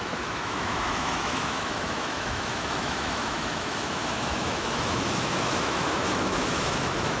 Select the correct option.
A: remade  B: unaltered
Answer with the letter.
A